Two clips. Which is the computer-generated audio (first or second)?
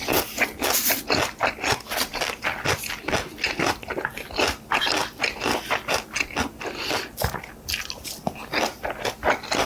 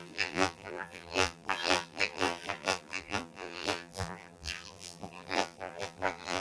second